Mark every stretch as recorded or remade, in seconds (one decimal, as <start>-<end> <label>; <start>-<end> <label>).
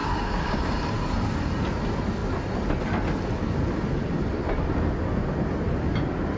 0.0-0.6 remade; 0.6-6.4 recorded